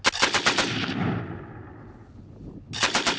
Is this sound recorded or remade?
recorded